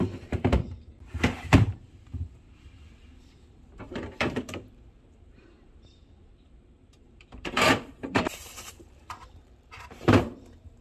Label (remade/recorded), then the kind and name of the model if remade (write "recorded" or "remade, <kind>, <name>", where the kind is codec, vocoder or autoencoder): remade, vocoder, BigVGAN v2